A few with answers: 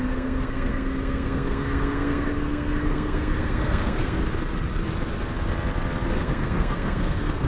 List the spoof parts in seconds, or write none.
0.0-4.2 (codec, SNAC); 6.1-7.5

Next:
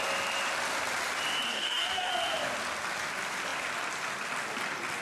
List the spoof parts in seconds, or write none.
1.5-2.1 (codec, DAC)